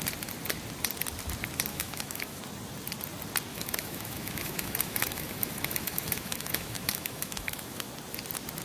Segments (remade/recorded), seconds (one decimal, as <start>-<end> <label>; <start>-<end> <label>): 0.0-1.7 recorded; 1.7-2.4 remade; 2.4-3.5 recorded; 3.5-7.9 remade; 7.9-8.6 recorded